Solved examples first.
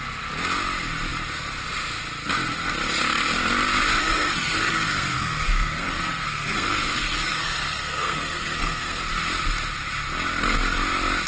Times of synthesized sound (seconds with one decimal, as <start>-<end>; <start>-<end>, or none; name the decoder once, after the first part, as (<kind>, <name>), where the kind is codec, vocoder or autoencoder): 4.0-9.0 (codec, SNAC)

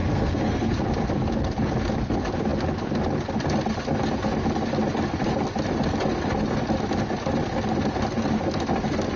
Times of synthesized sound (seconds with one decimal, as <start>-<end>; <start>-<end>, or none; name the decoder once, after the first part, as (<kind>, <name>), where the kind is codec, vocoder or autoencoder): 0.0-0.7 (codec, SNAC)

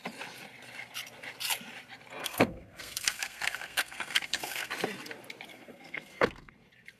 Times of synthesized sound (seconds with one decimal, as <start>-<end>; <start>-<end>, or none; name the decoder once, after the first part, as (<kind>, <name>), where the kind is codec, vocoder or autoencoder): 2.2-4.7 (codec, SNAC); 5.5-6.5

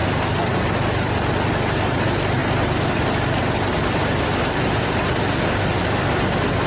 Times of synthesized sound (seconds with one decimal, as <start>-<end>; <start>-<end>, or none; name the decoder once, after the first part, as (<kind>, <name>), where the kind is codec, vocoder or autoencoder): none